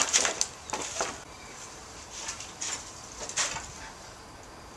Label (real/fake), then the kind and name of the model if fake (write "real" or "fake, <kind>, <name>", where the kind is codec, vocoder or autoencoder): real